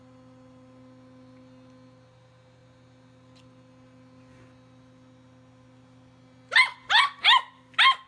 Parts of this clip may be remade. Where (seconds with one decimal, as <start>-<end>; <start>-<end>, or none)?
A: none